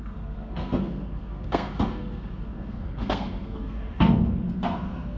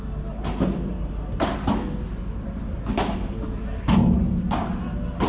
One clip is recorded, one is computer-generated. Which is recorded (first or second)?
second